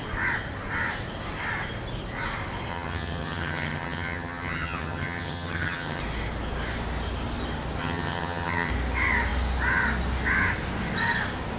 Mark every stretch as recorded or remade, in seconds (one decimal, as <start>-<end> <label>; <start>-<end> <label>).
0.0-2.7 recorded; 2.7-6.0 remade; 6.0-7.8 recorded; 7.8-8.7 remade; 8.7-11.6 recorded